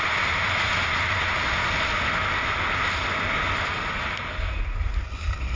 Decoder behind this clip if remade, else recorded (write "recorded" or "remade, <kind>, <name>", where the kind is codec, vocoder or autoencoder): recorded